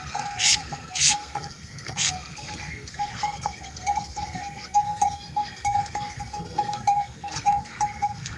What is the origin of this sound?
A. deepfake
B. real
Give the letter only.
A